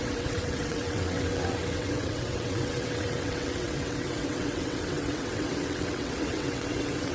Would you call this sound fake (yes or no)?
yes